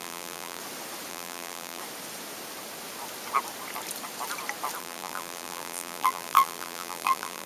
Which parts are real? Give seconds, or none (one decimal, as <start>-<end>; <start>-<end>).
0.6-1.1; 1.8-4.8